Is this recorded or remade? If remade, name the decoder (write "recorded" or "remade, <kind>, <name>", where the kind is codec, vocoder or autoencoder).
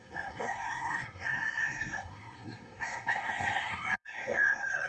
remade, codec, SNAC